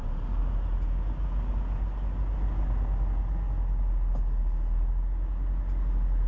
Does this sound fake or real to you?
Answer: real